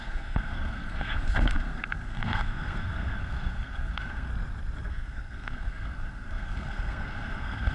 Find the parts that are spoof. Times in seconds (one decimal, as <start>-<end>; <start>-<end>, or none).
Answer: 0.0-4.3; 4.9-7.7